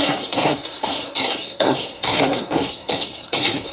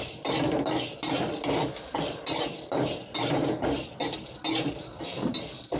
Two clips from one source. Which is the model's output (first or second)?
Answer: first